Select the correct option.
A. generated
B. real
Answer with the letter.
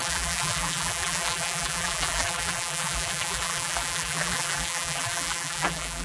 A